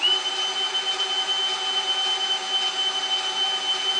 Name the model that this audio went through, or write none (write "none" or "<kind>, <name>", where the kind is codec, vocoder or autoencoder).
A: none